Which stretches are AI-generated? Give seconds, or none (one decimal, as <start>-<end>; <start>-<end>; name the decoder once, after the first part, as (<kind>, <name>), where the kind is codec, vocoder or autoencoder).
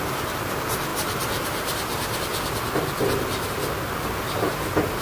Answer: none